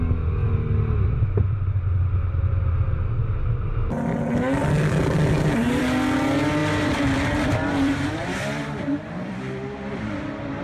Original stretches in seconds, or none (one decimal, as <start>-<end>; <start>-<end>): 0.0-4.6; 5.8-6.6